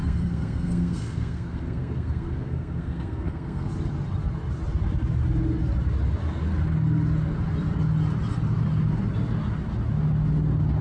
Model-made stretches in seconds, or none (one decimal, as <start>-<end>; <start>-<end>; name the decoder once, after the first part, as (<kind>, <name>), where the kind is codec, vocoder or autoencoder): 0.0-3.7 (codec, SNAC)